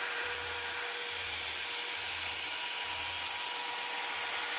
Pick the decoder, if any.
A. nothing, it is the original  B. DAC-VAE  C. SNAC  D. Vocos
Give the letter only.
A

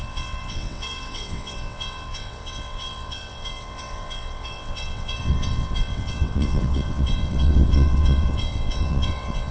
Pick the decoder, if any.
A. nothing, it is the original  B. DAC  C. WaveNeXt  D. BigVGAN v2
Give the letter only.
C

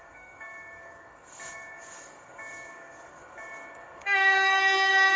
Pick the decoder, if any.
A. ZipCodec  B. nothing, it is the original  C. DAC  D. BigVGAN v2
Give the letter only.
C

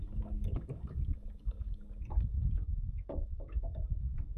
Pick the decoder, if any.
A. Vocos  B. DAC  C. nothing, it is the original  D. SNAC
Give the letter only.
B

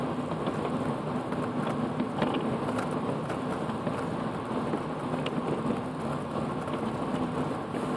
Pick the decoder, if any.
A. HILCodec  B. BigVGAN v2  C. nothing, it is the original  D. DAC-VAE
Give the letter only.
C